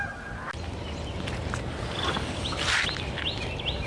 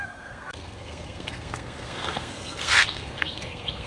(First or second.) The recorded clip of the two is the first